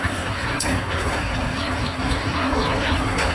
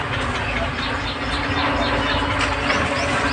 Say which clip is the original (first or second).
second